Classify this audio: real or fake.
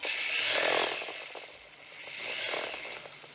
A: real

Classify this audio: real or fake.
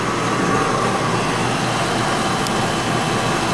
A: real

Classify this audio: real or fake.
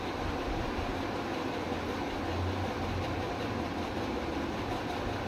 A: real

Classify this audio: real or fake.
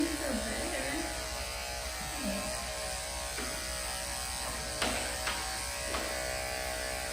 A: real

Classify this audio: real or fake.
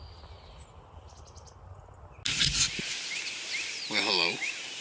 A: real